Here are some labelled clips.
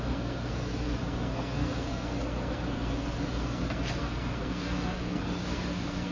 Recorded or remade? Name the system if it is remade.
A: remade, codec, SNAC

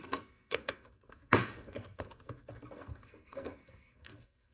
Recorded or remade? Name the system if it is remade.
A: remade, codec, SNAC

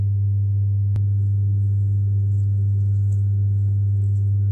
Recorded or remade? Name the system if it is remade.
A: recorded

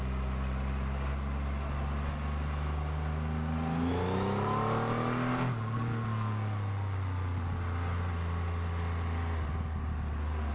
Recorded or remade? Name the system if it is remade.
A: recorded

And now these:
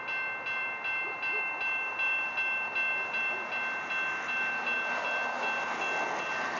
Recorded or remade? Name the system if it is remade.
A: recorded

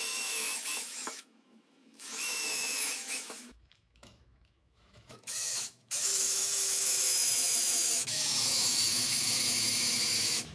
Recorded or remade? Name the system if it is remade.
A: remade, autoencoder, DAC-VAE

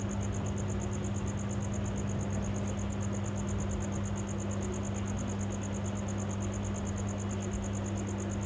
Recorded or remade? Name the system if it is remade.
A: recorded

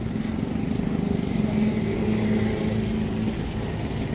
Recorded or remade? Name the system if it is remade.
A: recorded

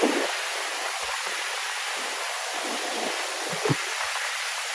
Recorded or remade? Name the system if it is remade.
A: recorded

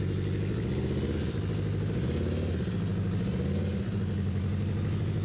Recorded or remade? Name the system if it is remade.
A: recorded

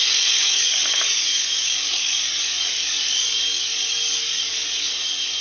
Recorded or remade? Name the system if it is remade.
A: remade, codec, DAC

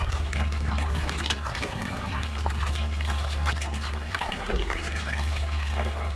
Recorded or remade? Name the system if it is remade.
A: remade, codec, SNAC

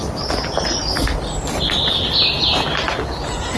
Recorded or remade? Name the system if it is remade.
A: recorded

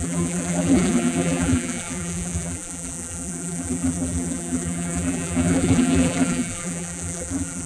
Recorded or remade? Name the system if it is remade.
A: remade, vocoder, BigVGAN v2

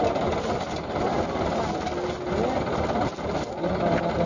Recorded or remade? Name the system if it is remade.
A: recorded